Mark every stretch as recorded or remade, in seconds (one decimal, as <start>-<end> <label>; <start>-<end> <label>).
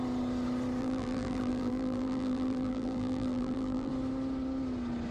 0.0-0.8 recorded; 0.8-3.9 remade; 3.9-5.1 recorded